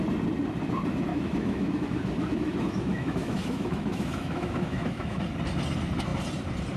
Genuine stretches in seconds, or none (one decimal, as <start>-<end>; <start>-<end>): 0.0-1.1; 5.2-6.8